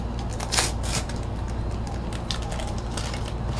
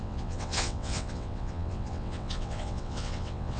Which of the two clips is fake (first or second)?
second